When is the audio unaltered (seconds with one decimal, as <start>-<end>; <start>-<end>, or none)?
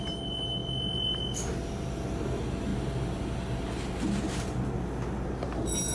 0.0-5.9